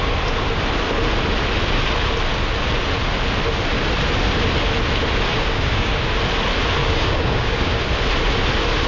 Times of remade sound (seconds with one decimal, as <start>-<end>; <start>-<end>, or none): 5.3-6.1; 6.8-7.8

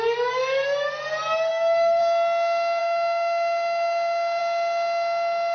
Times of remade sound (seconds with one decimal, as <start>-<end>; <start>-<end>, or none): 1.5-2.0; 2.8-4.4

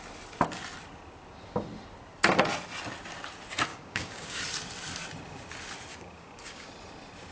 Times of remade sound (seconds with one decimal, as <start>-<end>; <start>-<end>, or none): 3.7-4.4; 5.9-6.7